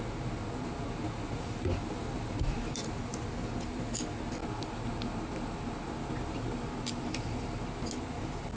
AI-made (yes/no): no